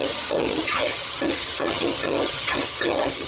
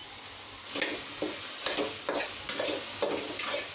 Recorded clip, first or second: second